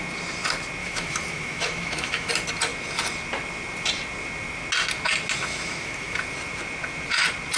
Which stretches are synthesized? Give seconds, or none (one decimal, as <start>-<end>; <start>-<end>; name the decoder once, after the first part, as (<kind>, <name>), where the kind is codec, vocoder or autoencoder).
0.8-2.3 (autoencoder, DAC-VAE); 5.5-6.2